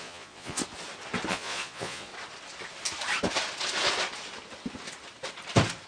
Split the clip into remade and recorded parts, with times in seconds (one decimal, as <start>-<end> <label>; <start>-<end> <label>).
0.0-0.6 remade; 0.6-1.3 recorded; 1.3-2.1 remade; 2.1-5.9 recorded